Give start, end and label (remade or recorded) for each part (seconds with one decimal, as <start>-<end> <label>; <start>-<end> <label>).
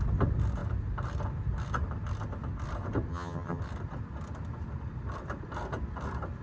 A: 0.0-3.1 recorded; 3.1-3.6 remade; 3.6-6.4 recorded